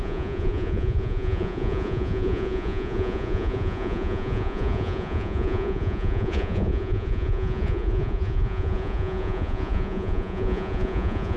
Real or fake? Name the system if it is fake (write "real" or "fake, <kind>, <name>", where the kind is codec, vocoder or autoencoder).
fake, vocoder, Vocos